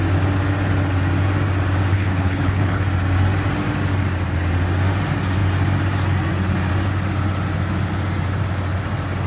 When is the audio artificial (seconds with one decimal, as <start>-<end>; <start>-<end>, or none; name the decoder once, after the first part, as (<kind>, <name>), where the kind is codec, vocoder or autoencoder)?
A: 1.9-2.8 (codec, HILCodec)